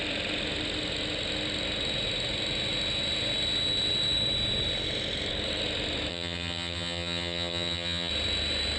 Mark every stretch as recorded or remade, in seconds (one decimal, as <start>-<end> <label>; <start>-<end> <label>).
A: 0.0-6.1 recorded; 6.1-8.1 remade; 8.1-8.8 recorded